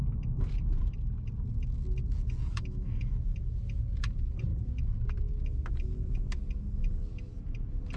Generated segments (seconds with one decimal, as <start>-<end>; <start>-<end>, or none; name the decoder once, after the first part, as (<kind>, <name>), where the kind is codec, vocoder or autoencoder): 2.5-3.1 (autoencoder, DAC-VAE)